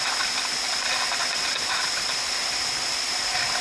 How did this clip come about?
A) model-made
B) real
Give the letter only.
B